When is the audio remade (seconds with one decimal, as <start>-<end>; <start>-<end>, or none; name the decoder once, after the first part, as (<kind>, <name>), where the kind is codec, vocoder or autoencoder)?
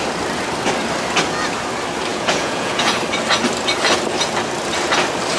2.1-3.0 (vocoder, Vocos)